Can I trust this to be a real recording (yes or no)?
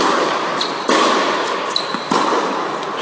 yes